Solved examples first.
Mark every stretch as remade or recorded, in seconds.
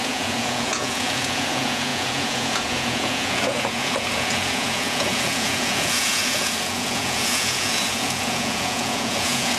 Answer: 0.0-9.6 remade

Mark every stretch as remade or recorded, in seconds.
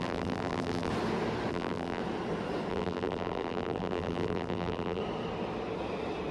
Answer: 0.0-0.9 remade; 0.9-1.5 recorded; 1.5-2.0 remade; 2.0-2.7 recorded; 2.7-5.0 remade; 5.0-6.3 recorded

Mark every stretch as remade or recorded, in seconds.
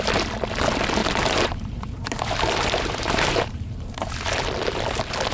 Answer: 0.0-1.0 recorded; 1.0-4.2 remade; 4.2-5.3 recorded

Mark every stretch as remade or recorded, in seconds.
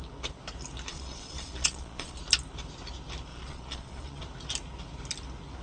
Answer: 0.0-0.9 recorded; 0.9-2.2 remade; 2.2-3.3 recorded; 3.3-4.2 remade; 4.2-5.6 recorded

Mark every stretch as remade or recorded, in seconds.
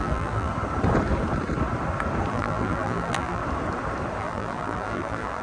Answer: 0.0-0.5 remade; 0.5-2.3 recorded; 2.3-3.4 remade; 3.4-4.2 recorded; 4.2-5.4 remade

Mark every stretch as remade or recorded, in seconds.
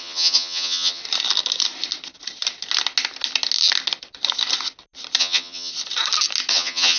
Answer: 0.0-1.0 remade; 1.0-5.2 recorded; 5.2-5.7 remade; 5.7-6.5 recorded; 6.5-7.0 remade